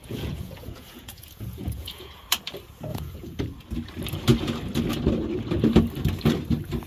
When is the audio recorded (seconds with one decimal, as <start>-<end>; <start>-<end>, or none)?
2.2-2.9; 3.4-6.9